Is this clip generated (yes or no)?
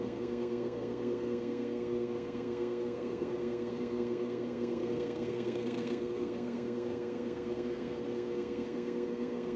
yes